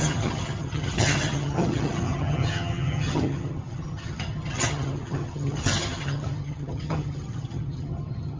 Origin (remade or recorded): remade